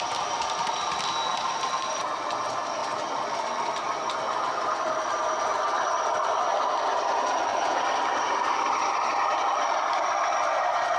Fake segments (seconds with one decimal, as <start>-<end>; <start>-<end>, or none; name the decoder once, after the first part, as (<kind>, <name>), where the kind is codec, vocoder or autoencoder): 2.8-6.4 (vocoder, BigVGAN v2); 7.5-9.1